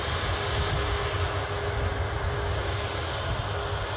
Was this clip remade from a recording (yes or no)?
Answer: no